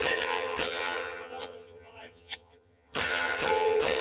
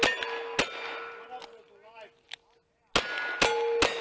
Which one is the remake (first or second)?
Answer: first